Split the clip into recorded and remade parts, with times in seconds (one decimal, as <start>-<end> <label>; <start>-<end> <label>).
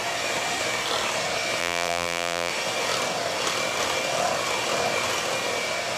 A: 0.0-1.6 recorded; 1.6-2.5 remade; 2.5-6.0 recorded